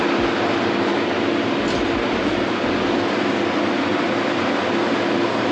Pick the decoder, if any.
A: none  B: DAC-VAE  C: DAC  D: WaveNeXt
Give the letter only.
A